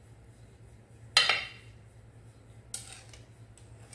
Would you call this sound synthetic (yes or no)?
no